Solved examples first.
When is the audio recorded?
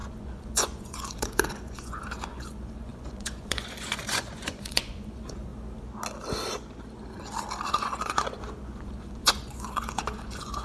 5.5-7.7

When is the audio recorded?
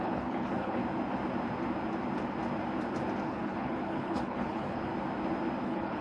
0.8-3.2; 4.9-5.6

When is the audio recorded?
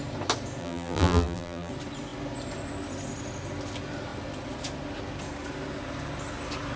0.0-0.6; 1.7-6.8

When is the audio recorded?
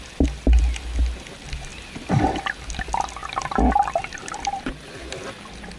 0.0-5.8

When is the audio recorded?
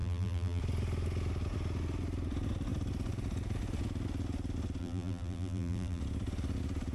0.6-4.8; 6.0-6.9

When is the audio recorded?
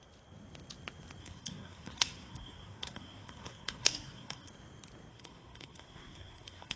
0.0-1.2; 4.5-5.1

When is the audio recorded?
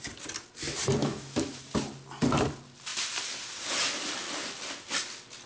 0.0-1.0; 1.6-5.5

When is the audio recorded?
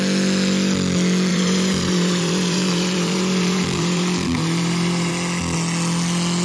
0.0-1.3; 5.1-6.4